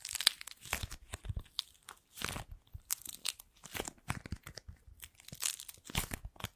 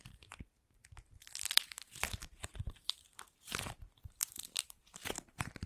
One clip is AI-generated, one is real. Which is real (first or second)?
first